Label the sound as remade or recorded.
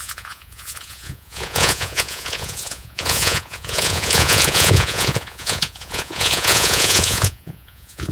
remade